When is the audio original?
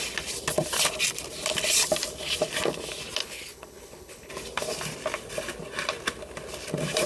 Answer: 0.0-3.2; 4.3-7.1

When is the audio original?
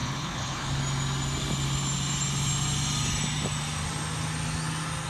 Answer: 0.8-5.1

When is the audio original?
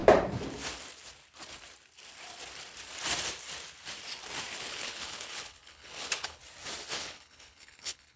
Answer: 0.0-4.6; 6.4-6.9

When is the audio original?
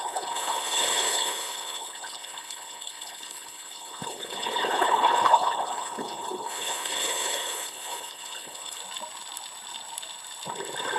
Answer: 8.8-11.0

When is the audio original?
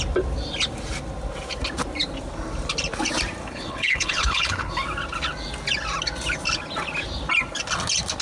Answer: 0.0-3.4; 4.7-8.2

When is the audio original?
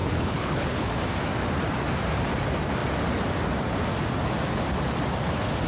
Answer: 0.9-5.7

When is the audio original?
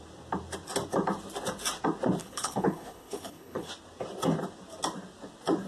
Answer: 0.0-2.2; 3.7-5.7